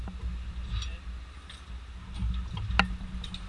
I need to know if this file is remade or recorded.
recorded